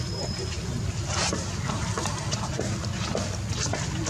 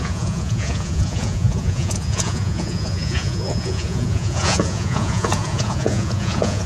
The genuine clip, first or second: first